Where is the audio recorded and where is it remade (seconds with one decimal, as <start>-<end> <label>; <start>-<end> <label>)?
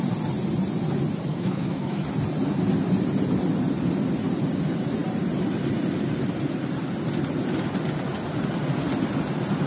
0.0-1.3 recorded; 1.3-2.0 remade; 2.0-9.7 recorded